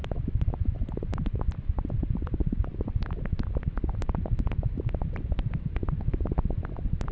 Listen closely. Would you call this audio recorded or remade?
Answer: remade